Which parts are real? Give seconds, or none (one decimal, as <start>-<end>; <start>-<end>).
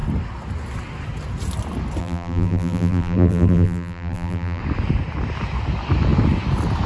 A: 0.0-2.0; 4.6-6.9